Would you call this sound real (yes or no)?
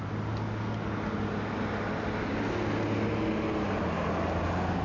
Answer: yes